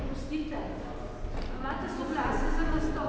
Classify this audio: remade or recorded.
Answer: recorded